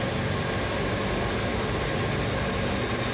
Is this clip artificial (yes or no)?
no